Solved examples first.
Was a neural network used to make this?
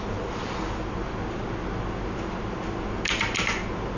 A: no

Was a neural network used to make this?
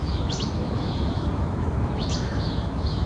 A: yes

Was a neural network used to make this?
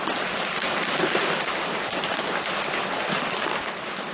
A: no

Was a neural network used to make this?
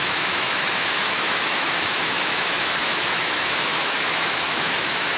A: yes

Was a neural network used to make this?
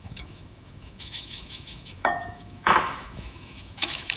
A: yes